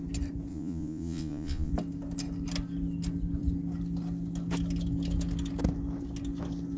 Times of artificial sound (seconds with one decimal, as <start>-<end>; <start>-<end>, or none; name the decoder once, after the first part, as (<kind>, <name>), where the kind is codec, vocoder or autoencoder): 0.5-1.7 (vocoder, Vocos)